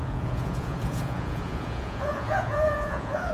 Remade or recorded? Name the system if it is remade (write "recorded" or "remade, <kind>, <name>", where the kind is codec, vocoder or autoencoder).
remade, vocoder, Vocos